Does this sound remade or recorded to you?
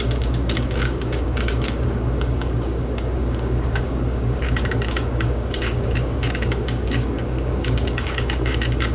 remade